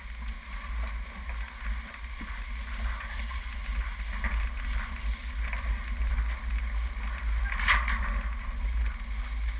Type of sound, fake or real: real